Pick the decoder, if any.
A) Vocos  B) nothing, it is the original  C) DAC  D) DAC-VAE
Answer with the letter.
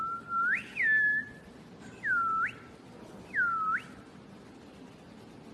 B